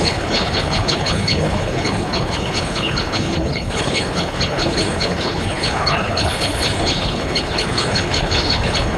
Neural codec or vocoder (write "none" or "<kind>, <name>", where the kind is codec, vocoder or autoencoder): codec, HILCodec